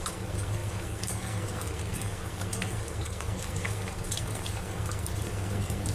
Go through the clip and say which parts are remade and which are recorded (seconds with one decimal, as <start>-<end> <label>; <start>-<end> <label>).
0.0-5.9 remade